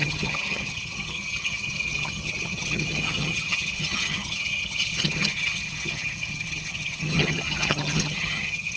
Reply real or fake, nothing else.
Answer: fake